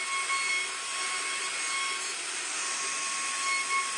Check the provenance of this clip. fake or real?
real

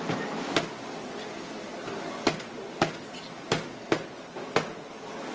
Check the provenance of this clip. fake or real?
real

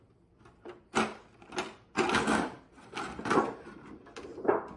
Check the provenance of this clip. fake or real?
real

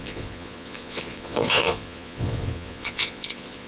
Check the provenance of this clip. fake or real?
fake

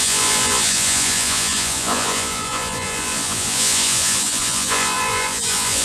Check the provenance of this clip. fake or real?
fake